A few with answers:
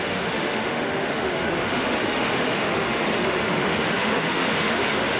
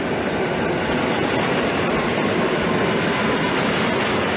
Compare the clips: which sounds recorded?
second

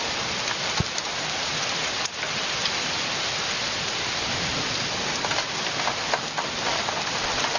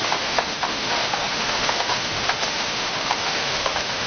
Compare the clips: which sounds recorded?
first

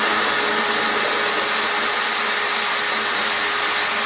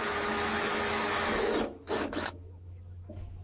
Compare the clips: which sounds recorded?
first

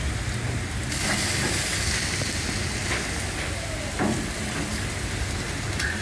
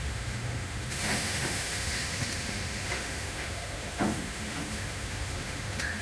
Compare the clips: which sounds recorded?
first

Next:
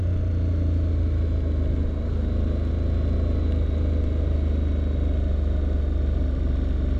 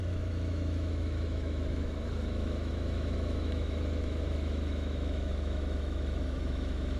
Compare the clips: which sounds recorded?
first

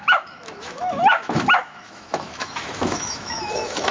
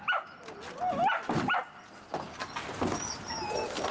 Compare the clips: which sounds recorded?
second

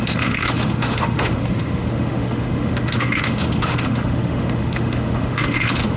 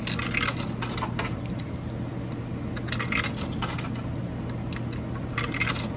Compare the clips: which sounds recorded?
second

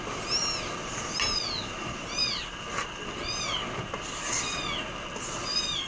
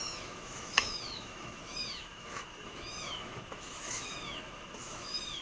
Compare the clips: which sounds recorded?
first